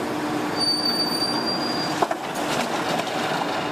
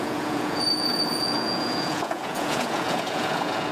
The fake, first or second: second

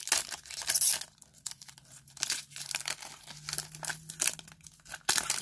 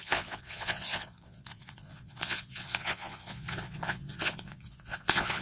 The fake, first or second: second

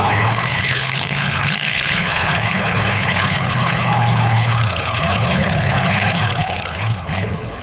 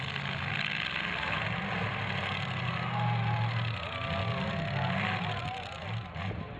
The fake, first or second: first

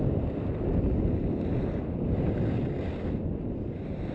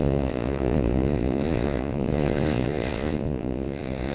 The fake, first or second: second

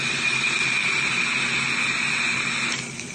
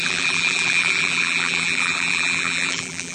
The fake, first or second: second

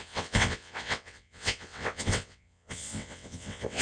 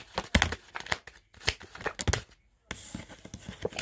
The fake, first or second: first